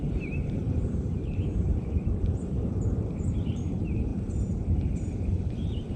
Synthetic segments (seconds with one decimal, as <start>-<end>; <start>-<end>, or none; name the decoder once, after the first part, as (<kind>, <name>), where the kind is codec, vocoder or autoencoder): 0.0-6.0 (vocoder, BigVGAN v2)